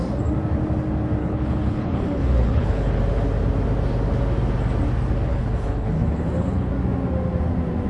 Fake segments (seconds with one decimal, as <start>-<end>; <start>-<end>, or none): 1.2-3.0; 5.3-6.7